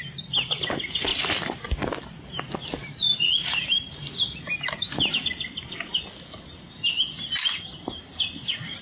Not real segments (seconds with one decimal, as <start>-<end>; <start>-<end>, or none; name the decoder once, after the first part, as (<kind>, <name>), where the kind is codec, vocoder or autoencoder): 1.1-5.9 (vocoder, BigVGAN v2)